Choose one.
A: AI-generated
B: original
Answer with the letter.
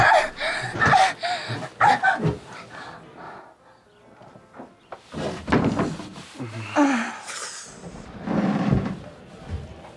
B